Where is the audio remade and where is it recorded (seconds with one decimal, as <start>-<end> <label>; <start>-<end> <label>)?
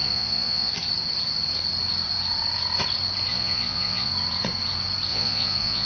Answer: 0.0-0.7 remade; 0.7-3.3 recorded; 3.3-4.1 remade; 4.1-5.1 recorded; 5.1-5.9 remade